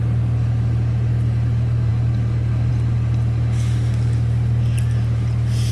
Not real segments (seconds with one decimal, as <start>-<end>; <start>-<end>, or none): none